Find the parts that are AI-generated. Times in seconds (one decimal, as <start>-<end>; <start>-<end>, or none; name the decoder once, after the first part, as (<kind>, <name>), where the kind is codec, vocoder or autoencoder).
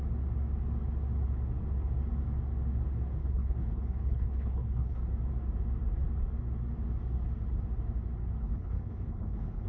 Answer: 3.2-5.0 (codec, HILCodec); 8.4-9.7